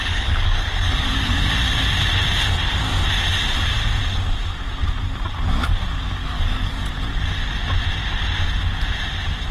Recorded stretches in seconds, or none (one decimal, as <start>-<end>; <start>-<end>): 1.5-6.2; 6.9-9.5